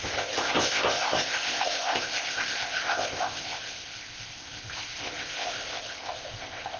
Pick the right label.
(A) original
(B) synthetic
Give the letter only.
B